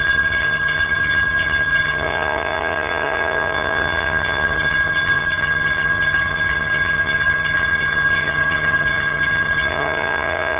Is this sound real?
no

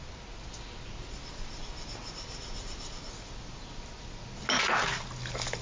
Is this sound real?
yes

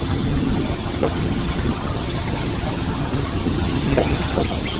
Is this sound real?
no